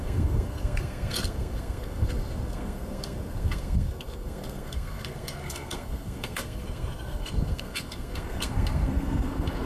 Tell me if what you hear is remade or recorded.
remade